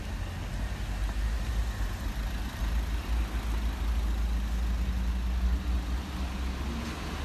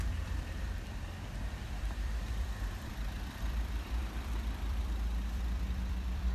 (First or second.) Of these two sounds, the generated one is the second